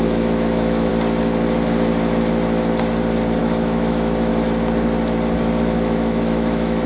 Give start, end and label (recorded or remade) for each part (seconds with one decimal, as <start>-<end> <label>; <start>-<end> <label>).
0.0-0.9 remade; 0.9-3.4 recorded; 3.4-4.3 remade; 4.3-5.6 recorded; 5.6-6.9 remade